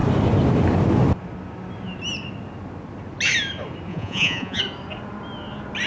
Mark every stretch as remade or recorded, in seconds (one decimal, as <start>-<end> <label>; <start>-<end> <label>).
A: 0.0-3.9 recorded; 3.9-4.6 remade; 4.6-5.9 recorded